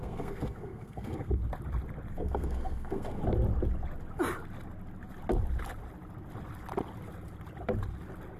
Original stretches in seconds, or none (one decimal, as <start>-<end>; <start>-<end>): 1.4-2.1; 3.2-8.4